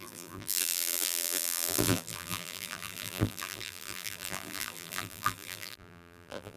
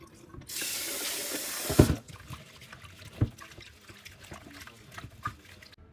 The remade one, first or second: first